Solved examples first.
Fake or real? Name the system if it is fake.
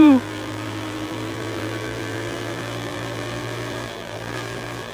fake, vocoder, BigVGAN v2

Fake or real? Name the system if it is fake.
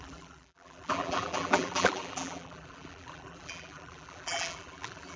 fake, vocoder, BigVGAN v2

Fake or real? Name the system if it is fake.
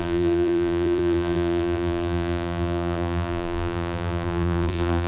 fake, vocoder, BigVGAN v2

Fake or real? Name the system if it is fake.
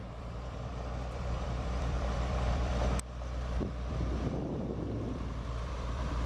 fake, vocoder, BigVGAN v2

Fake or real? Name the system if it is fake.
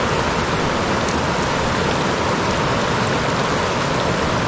real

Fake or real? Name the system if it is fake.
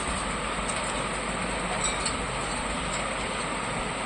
real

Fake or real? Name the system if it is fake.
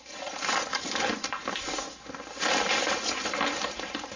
fake, vocoder, BigVGAN v2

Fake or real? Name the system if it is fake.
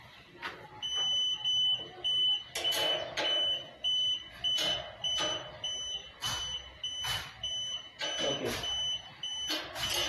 real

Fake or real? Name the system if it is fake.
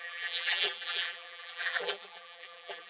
fake, vocoder, BigVGAN v2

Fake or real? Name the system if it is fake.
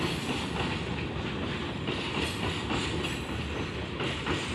real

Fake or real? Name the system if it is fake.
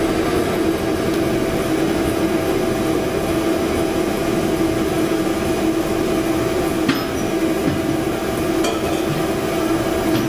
real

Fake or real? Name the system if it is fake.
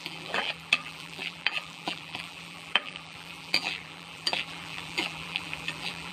fake, vocoder, BigVGAN v2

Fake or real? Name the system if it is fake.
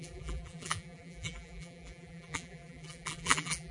fake, vocoder, BigVGAN v2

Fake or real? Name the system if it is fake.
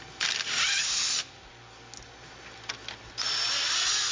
real